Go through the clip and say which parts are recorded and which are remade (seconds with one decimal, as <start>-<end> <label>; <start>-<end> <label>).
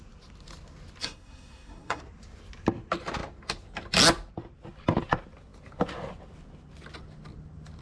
0.0-1.0 recorded; 1.0-2.0 remade; 2.0-7.8 recorded